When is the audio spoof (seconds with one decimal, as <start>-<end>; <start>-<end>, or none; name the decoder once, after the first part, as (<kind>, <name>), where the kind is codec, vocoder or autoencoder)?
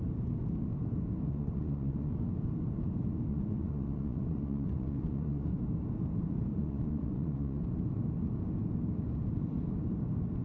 1.3-2.1 (vocoder, Vocos); 3.3-5.6; 6.5-7.6